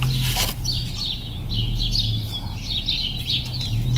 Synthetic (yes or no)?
no